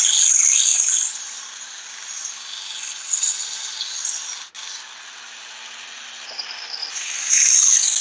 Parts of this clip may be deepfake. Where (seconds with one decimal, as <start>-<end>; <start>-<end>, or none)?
none